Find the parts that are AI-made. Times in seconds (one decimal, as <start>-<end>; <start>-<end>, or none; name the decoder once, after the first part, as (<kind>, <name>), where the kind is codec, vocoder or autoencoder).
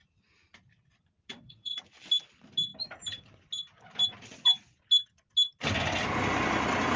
1.3-1.8 (vocoder, WaveNeXt)